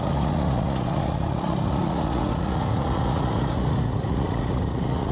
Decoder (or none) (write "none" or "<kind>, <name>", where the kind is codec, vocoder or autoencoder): vocoder, Vocos